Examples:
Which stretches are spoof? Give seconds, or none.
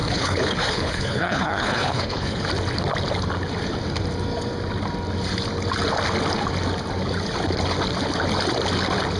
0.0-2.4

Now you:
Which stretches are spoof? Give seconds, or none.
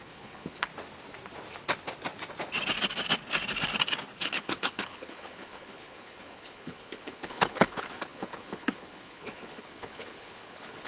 0.0-0.7; 4.3-10.9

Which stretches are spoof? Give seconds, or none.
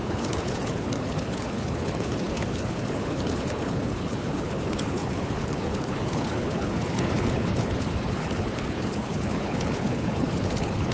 0.0-10.9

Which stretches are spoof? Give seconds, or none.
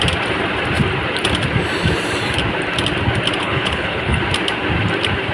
3.4-4.2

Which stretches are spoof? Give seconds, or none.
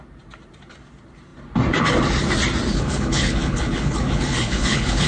2.7-5.1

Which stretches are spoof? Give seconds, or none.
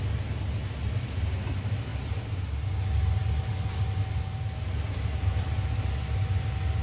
none